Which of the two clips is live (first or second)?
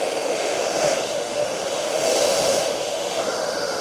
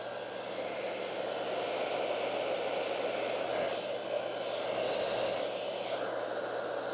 second